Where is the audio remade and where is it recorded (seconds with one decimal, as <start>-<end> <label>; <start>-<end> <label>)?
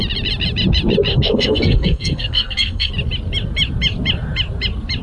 0.0-1.1 recorded; 1.1-2.9 remade; 2.9-5.0 recorded